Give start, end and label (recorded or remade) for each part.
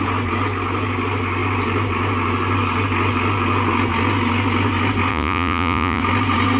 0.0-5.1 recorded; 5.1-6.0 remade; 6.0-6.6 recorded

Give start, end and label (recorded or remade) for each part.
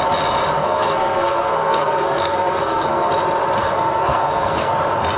0.0-0.6 recorded; 0.6-3.1 remade; 3.1-3.6 recorded; 3.6-4.7 remade; 4.7-5.2 recorded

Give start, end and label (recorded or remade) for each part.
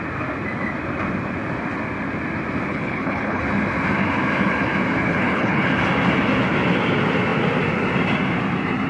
0.0-2.7 recorded; 2.7-3.4 remade; 3.4-5.1 recorded; 5.1-5.7 remade; 5.7-8.9 recorded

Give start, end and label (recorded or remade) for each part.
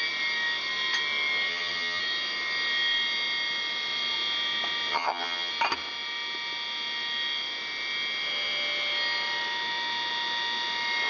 0.0-1.5 recorded; 1.5-2.0 remade; 2.0-4.9 recorded; 4.9-5.5 remade; 5.5-11.1 recorded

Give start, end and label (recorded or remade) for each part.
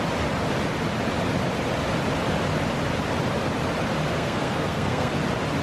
0.0-4.1 recorded; 4.1-5.1 remade; 5.1-5.6 recorded